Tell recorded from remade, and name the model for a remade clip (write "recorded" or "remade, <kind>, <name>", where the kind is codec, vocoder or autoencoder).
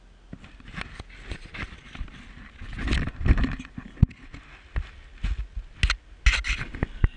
recorded